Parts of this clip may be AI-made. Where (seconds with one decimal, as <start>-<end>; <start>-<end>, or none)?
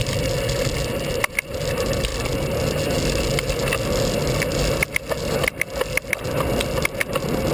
none